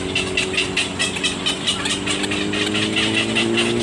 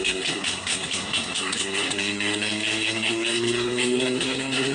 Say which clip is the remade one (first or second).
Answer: second